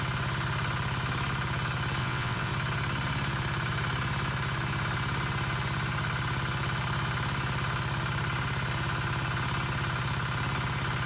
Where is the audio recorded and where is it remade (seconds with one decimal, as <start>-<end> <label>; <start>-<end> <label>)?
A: 0.0-2.0 recorded; 2.0-2.5 remade; 2.5-11.1 recorded